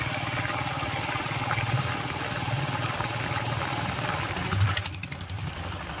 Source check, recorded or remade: recorded